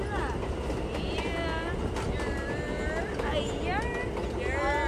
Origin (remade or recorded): recorded